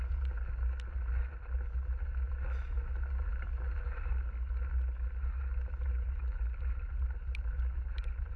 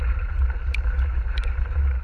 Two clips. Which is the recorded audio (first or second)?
first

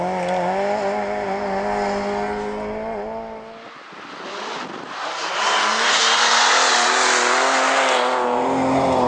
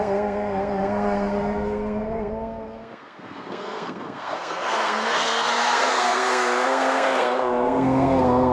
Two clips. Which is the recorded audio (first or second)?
first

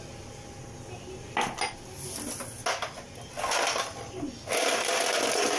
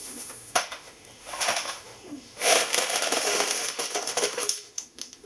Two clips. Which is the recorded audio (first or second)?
first